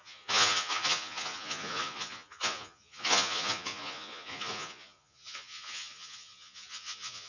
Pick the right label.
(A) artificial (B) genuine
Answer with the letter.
A